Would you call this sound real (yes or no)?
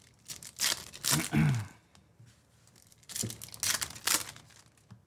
yes